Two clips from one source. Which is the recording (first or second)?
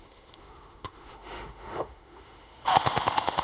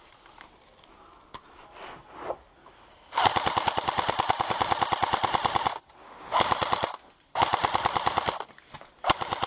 second